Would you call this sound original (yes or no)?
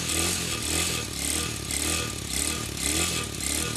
yes